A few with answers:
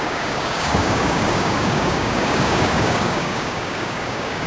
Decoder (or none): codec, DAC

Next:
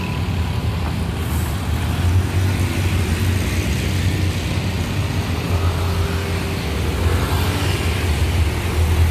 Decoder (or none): none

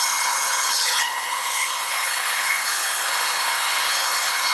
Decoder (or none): codec, HILCodec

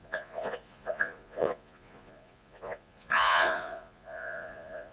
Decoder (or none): vocoder, Vocos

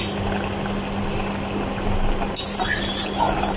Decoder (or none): none